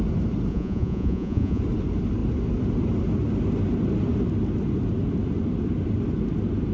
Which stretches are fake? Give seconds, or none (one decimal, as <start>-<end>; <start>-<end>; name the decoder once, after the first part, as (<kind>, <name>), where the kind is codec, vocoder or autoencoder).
0.5-1.6 (vocoder, Vocos)

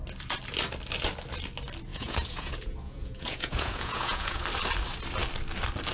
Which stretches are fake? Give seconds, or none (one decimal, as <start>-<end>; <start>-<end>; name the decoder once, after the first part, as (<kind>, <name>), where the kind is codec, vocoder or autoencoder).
1.9-4.4 (vocoder, Vocos)

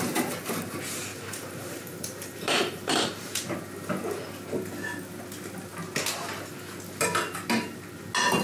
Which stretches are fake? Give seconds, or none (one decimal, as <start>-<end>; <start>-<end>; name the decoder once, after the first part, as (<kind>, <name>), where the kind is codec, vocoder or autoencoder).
1.1-3.3 (vocoder, BigVGAN v2)

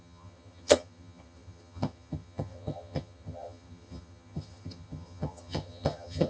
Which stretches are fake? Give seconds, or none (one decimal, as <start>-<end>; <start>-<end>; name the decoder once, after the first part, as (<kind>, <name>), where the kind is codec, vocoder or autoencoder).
0.0-6.3 (vocoder, HiFi-GAN)

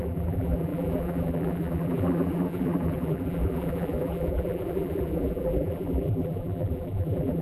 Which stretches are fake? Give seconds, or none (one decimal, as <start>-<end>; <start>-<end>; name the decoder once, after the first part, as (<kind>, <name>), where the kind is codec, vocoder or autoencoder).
0.0-7.4 (vocoder, BigVGAN v2)

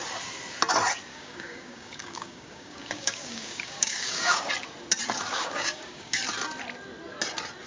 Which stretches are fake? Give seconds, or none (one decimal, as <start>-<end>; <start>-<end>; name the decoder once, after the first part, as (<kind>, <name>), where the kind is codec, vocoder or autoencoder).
1.1-4.5 (codec, DAC); 5.3-6.2

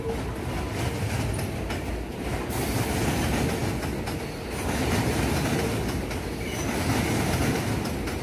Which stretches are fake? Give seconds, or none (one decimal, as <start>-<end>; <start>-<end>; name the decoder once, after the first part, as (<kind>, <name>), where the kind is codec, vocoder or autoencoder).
none

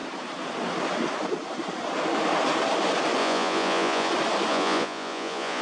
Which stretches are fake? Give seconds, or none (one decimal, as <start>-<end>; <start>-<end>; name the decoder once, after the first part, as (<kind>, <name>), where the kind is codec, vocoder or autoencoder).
3.2-4.1 (vocoder, Vocos); 4.5-5.6